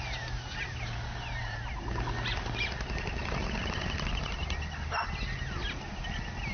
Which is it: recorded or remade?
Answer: recorded